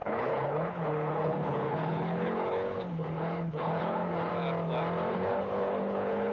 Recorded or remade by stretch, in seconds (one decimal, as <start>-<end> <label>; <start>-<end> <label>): 0.0-4.3 remade; 4.3-5.1 recorded; 5.1-6.3 remade